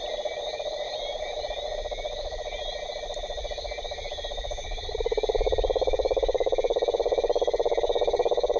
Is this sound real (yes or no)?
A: no